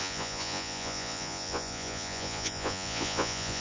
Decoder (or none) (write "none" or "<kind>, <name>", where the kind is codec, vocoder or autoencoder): vocoder, Vocos